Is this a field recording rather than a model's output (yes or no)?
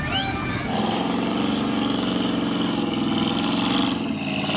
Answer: yes